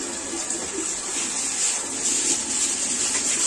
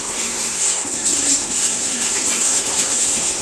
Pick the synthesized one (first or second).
second